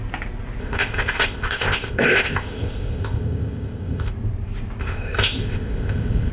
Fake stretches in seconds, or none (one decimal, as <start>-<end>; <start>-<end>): 0.6-4.1; 4.8-6.3